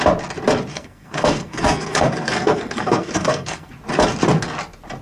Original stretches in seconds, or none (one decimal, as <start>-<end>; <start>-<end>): 0.0-0.7; 3.7-5.0